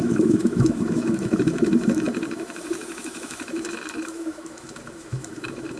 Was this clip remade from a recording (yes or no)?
yes